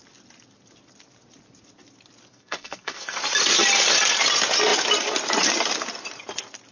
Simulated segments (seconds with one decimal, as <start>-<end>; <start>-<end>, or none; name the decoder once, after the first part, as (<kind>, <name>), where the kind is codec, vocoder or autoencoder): 2.3-3.2 (codec, SNAC)